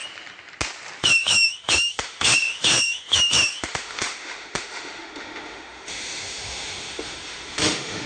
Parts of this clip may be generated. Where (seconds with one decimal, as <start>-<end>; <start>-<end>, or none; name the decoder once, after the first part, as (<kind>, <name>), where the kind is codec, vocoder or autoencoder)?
1.0-8.1 (autoencoder, DAC-VAE)